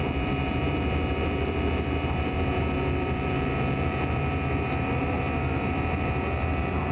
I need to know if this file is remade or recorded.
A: remade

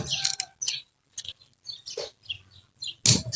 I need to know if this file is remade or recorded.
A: recorded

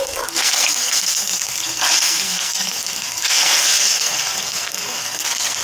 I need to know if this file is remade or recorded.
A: remade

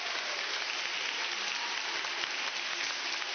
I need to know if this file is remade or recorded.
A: recorded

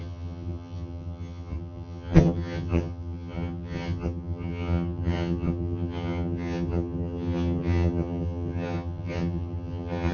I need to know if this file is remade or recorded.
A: remade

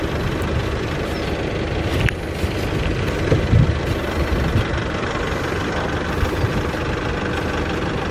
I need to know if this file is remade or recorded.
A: recorded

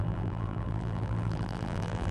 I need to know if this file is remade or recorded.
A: remade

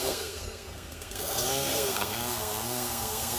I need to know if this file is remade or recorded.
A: remade